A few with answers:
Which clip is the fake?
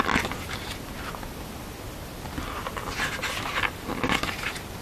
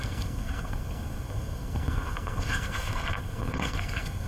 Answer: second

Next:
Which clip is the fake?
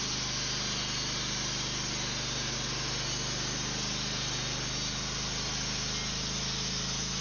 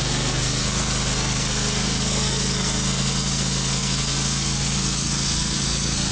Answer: second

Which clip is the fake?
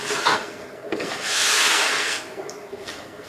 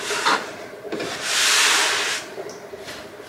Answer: first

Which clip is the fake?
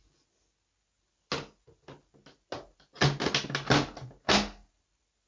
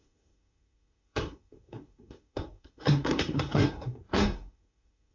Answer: second